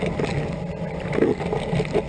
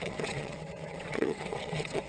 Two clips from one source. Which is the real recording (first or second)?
first